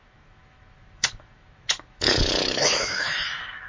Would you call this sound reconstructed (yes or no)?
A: yes